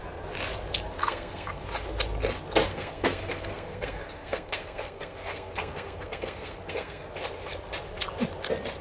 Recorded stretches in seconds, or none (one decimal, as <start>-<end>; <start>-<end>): 0.0-1.0; 1.6-2.7; 7.1-8.8